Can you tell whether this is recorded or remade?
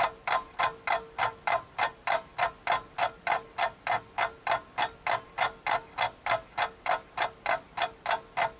recorded